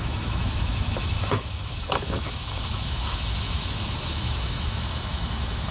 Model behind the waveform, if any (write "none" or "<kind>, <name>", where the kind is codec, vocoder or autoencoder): autoencoder, DAC-VAE